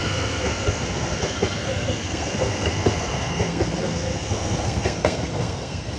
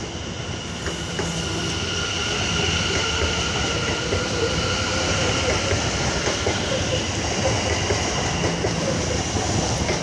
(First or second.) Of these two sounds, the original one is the second